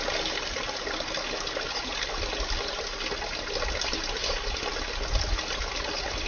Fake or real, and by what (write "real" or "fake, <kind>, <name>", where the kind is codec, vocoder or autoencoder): real